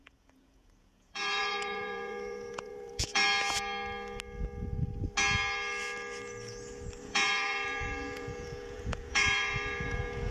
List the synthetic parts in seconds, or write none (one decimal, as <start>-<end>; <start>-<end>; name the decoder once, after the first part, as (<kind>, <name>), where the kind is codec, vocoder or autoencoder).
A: 0.0-3.2 (vocoder, Vocos); 7.0-10.3